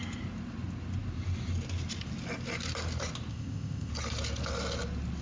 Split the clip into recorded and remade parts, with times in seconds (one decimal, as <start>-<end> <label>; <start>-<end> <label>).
0.0-3.3 recorded; 3.3-3.9 remade; 3.9-5.2 recorded